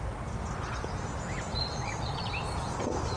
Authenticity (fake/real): real